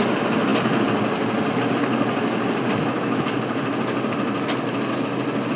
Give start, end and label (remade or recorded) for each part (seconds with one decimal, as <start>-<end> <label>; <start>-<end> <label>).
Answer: 0.0-5.6 recorded

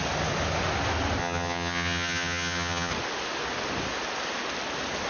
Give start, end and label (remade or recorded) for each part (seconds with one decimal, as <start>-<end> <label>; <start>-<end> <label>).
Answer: 0.0-1.2 recorded; 1.2-2.9 remade; 2.9-5.1 recorded

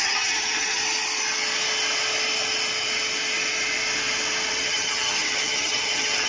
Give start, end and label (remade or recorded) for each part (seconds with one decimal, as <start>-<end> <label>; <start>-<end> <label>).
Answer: 0.0-0.8 remade; 0.8-4.6 recorded; 4.6-6.3 remade

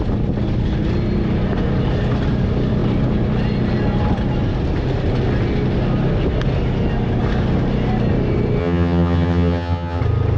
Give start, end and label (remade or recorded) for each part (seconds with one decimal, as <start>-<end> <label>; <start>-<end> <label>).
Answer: 0.0-8.6 recorded; 8.6-10.0 remade; 10.0-10.4 recorded

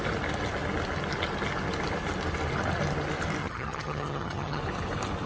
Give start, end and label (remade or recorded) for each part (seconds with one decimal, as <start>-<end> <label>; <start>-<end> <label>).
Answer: 0.0-3.4 recorded; 3.4-4.6 remade; 4.6-5.3 recorded

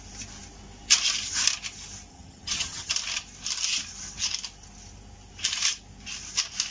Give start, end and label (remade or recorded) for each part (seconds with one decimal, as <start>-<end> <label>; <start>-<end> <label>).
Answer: 0.0-2.1 recorded; 2.1-2.9 remade; 2.9-6.7 recorded

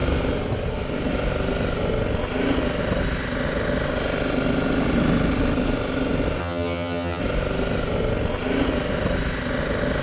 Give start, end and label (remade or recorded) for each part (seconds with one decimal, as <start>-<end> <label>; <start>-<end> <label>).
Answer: 0.0-6.4 recorded; 6.4-7.2 remade; 7.2-10.0 recorded

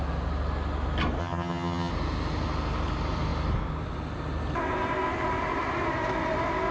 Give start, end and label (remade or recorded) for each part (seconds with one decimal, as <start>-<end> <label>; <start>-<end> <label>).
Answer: 0.0-1.2 recorded; 1.2-1.9 remade; 1.9-6.7 recorded